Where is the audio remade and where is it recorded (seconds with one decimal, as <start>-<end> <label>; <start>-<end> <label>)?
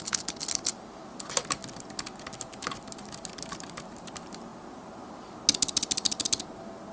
0.0-6.9 recorded